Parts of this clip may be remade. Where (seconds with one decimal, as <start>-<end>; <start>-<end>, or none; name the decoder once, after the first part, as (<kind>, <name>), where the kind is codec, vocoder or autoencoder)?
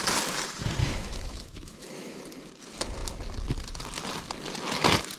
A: 0.8-2.2 (autoencoder, DAC-VAE)